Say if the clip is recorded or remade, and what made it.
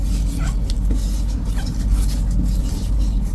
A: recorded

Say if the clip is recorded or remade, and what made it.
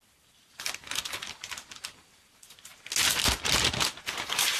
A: recorded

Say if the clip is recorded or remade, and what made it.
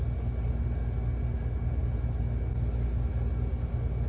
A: recorded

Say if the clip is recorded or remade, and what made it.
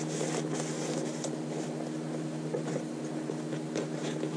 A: recorded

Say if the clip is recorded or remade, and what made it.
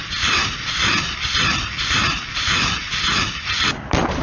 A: recorded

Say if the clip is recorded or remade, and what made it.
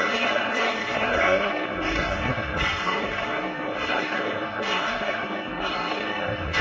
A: remade, codec, SNAC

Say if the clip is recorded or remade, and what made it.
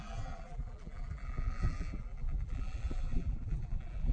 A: remade, vocoder, BigVGAN v2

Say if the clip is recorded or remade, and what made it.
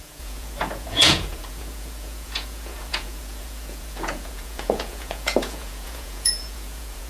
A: remade, vocoder, Vocos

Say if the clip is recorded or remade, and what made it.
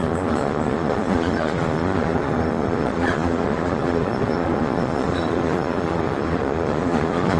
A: remade, vocoder, Vocos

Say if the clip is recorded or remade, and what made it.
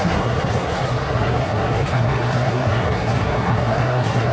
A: remade, codec, SNAC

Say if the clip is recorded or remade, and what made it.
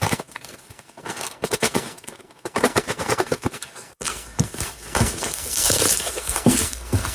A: remade, codec, SNAC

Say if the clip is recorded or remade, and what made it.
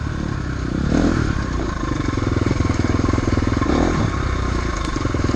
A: remade, vocoder, BigVGAN v2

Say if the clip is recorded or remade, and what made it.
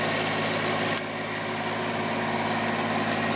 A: recorded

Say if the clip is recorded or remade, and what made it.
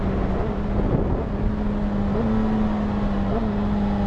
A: recorded